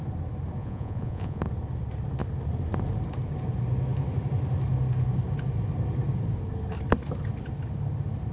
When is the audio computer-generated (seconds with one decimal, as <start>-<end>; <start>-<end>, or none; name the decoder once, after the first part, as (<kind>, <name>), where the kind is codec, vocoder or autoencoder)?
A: 0.6-1.4 (vocoder, Vocos)